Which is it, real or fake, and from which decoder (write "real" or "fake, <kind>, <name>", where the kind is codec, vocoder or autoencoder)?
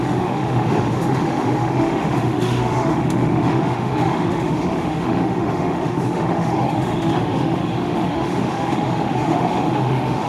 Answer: fake, autoencoder, DAC-VAE